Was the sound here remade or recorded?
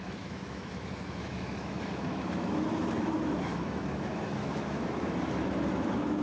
remade